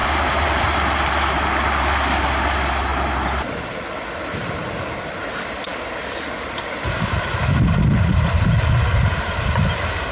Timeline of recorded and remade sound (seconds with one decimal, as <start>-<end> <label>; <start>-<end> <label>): 0.0-10.1 recorded